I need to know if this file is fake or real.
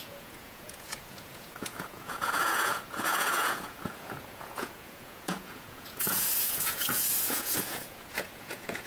fake